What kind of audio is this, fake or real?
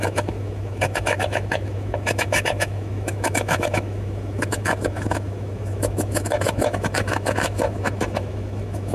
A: fake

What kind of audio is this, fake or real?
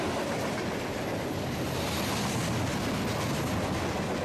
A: real